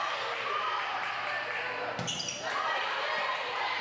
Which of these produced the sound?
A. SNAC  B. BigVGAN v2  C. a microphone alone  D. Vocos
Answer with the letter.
C